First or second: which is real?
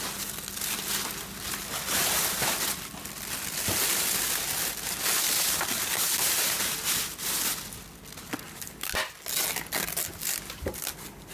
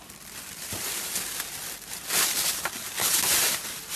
first